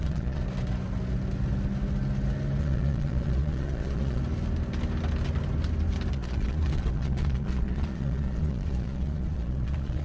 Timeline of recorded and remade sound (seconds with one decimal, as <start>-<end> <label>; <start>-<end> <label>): 0.0-0.4 remade; 0.4-2.6 recorded; 2.6-4.2 remade; 4.2-6.1 recorded; 6.1-10.0 remade